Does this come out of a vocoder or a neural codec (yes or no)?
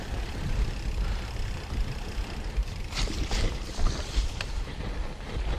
yes